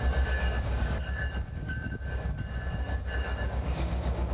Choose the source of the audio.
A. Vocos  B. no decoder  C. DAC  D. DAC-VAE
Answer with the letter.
C